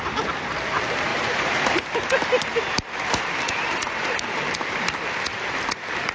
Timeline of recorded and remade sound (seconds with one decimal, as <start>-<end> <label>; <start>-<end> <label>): 0.0-1.1 recorded; 1.1-4.8 remade; 4.8-5.3 recorded; 5.3-6.1 remade